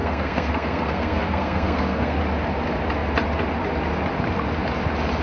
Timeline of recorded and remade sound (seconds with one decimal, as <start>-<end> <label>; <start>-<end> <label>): 0.0-2.2 remade; 2.2-5.2 recorded